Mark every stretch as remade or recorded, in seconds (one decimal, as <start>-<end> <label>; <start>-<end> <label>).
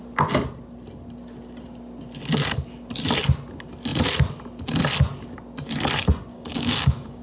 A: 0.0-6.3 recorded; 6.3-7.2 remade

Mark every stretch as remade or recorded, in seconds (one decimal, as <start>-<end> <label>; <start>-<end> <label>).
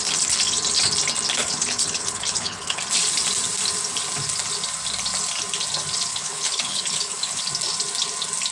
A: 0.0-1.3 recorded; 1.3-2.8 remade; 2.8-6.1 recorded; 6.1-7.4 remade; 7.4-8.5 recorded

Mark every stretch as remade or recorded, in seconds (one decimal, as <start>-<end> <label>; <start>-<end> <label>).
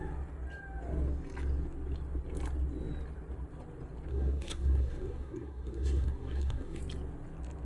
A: 0.0-4.1 recorded; 4.1-6.8 remade; 6.8-7.7 recorded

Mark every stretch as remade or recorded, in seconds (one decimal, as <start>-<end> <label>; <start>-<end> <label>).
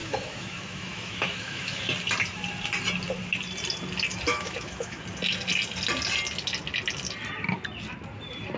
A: 0.0-1.8 remade; 1.8-4.3 recorded; 4.3-5.0 remade; 5.0-8.6 recorded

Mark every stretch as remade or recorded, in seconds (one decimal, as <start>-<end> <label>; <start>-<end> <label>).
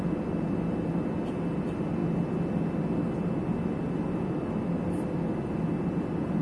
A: 0.0-6.4 recorded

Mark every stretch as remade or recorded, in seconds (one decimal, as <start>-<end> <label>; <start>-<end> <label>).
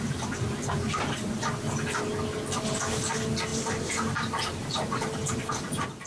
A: 0.0-6.1 recorded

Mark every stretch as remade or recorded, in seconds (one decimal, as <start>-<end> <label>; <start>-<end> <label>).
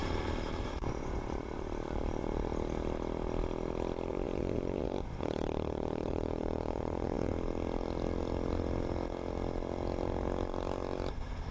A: 0.0-0.6 recorded; 0.6-2.5 remade; 2.5-4.1 recorded; 4.1-7.3 remade; 7.3-11.5 recorded